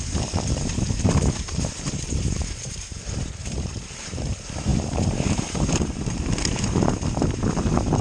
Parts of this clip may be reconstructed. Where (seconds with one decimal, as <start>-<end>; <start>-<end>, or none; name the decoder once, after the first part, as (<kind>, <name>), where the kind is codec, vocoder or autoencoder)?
0.0-8.0 (vocoder, BigVGAN v2)